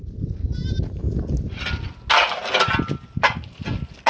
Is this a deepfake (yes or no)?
no